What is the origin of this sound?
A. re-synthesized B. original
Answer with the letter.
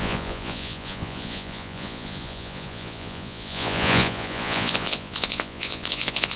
A